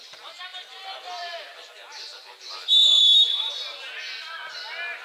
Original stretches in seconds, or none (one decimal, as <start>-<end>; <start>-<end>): 0.0-0.5; 3.5-5.0

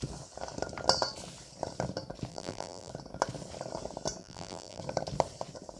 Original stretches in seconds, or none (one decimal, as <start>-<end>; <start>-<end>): 0.0-2.3; 2.9-4.2; 4.8-5.8